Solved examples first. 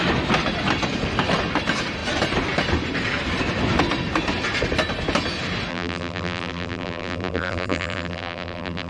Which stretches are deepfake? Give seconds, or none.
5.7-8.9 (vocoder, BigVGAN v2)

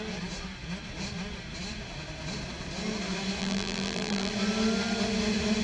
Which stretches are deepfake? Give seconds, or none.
3.4-4.3 (vocoder, BigVGAN v2)

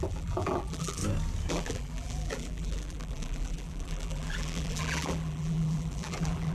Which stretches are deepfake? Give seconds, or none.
0.0-1.0 (vocoder, BigVGAN v2); 1.5-6.5

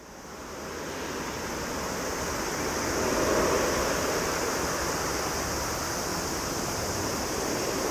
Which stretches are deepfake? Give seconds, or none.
4.0-4.7 (vocoder, BigVGAN v2); 6.1-7.9

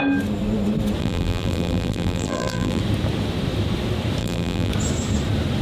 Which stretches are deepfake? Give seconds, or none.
1.0-2.8 (vocoder, BigVGAN v2); 4.2-4.7

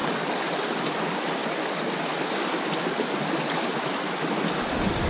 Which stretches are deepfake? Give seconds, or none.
0.7-1.4 (vocoder, BigVGAN v2); 4.5-5.1

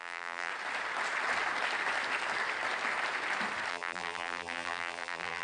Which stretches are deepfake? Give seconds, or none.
0.0-0.5 (vocoder, BigVGAN v2); 3.7-5.4

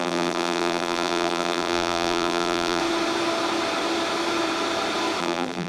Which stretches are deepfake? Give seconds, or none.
0.0-2.8 (vocoder, BigVGAN v2); 5.2-5.7